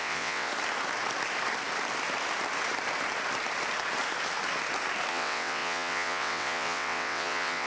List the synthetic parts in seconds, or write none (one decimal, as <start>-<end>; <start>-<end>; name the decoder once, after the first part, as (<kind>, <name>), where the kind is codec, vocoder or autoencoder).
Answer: 0.0-0.5 (vocoder, WaveNeXt); 5.1-7.7

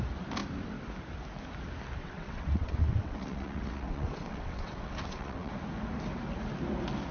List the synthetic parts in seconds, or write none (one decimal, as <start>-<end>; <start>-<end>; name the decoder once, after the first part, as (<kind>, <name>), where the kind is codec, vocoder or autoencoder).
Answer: 2.0-5.5 (vocoder, WaveNeXt)

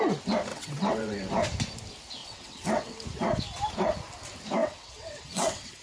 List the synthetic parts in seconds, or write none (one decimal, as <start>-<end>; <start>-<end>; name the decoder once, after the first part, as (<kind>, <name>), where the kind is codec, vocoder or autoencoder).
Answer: 0.5-1.3 (vocoder, WaveNeXt); 2.2-3.0; 4.6-5.8

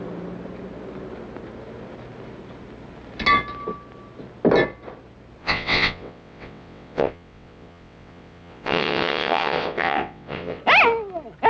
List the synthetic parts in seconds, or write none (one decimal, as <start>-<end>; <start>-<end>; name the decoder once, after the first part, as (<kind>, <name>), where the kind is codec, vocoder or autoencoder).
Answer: 5.4-10.6 (vocoder, WaveNeXt)